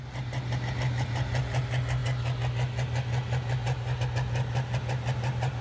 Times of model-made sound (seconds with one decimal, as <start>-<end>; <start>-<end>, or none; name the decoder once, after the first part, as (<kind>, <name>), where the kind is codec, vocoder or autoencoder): none